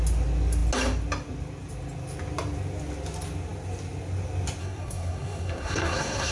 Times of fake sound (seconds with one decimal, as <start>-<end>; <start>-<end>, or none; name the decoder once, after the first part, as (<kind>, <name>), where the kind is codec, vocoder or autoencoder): 4.6-6.3 (codec, SNAC)